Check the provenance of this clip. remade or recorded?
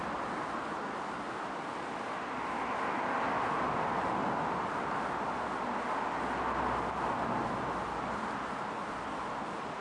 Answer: recorded